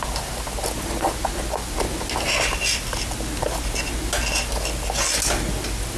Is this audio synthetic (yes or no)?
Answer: no